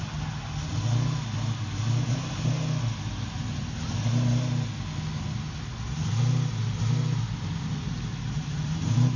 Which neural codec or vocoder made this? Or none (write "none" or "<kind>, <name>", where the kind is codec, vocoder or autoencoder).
none